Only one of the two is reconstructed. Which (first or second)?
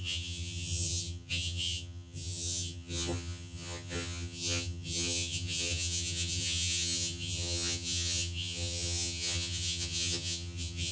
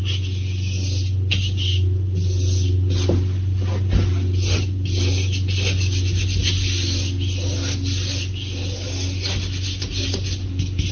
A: first